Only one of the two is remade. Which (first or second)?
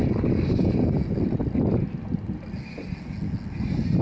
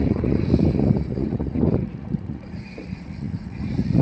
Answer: second